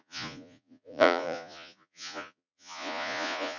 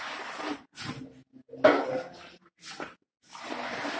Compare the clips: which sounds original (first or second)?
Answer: second